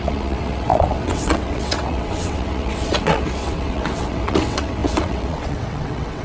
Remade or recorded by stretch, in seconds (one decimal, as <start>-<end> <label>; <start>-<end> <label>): 0.0-6.2 remade